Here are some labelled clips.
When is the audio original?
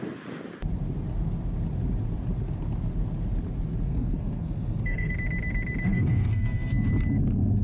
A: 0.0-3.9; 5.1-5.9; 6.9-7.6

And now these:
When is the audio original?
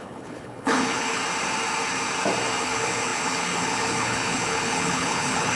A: 1.2-2.6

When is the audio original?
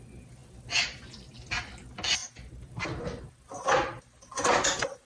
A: 0.0-5.0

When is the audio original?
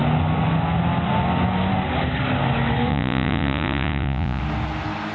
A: 0.0-2.9; 4.4-5.1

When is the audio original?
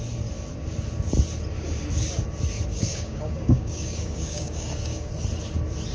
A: 0.0-2.7; 5.1-5.9